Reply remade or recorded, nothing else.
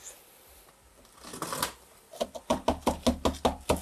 recorded